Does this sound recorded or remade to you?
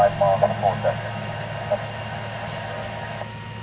recorded